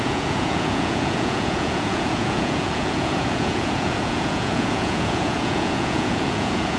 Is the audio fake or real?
fake